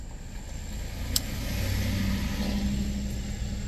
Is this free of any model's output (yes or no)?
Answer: yes